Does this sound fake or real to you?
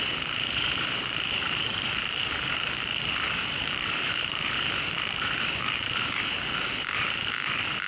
fake